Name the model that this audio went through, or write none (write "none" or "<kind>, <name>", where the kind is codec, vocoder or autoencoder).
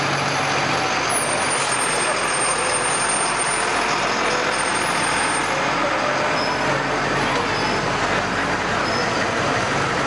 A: none